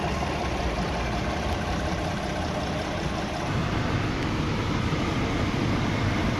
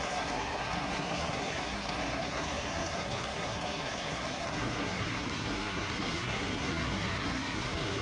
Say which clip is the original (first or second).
first